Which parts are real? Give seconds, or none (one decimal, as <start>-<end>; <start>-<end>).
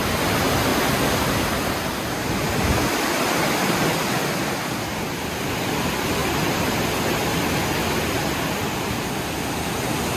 0.0-0.7; 5.5-10.2